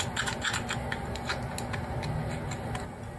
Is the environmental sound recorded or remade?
recorded